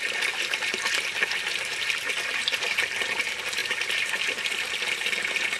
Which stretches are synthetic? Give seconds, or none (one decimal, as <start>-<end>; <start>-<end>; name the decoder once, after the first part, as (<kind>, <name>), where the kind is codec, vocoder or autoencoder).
none